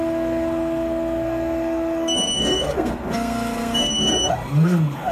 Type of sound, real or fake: fake